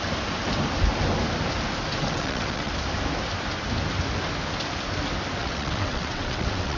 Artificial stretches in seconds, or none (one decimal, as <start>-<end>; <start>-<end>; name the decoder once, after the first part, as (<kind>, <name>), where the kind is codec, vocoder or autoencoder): 2.0-2.7 (vocoder, WaveNeXt); 5.4-6.8